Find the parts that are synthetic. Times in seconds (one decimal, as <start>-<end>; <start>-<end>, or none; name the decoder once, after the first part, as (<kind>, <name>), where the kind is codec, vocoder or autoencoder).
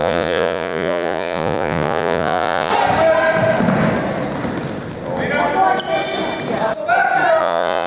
0.0-2.7 (vocoder, Vocos); 7.4-7.9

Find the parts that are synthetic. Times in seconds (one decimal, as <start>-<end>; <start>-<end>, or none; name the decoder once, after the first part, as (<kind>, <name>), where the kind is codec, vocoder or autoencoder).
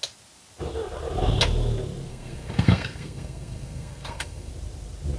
2.1-4.5 (codec, SNAC)